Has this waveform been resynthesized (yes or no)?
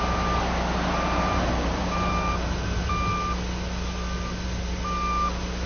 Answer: no